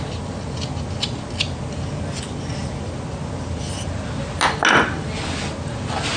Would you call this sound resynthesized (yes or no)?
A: no